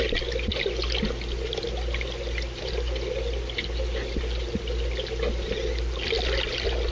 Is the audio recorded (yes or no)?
yes